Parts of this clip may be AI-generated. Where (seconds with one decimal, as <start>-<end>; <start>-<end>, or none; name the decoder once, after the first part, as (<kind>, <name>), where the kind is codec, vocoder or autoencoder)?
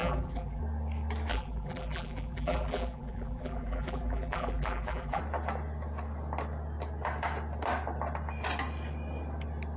0.0-0.6 (vocoder, BigVGAN v2); 1.3-5.2